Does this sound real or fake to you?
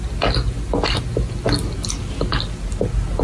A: real